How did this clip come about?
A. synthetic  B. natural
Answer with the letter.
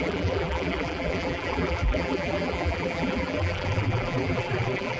A